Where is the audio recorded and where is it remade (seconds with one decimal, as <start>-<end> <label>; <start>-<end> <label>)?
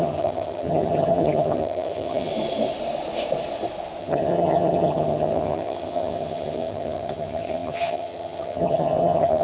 0.0-2.3 remade; 2.3-4.0 recorded; 4.0-9.4 remade